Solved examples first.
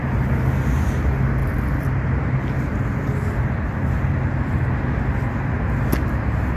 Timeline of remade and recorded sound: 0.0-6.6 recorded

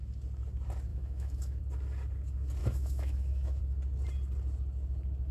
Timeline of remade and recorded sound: 0.0-0.9 recorded; 0.9-1.6 remade; 1.6-2.6 recorded; 2.6-3.6 remade; 3.6-5.3 recorded

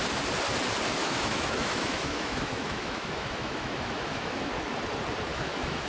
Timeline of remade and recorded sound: 0.0-1.0 recorded; 1.0-4.5 remade; 4.5-5.3 recorded; 5.3-5.9 remade

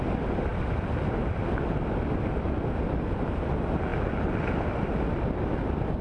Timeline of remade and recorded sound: 0.0-6.0 recorded

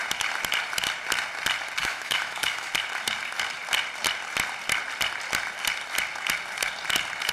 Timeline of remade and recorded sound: 0.0-1.8 recorded; 1.8-2.7 remade; 2.7-7.3 recorded

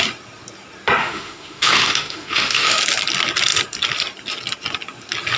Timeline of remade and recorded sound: 0.0-1.0 recorded; 1.0-2.8 remade; 2.8-5.4 recorded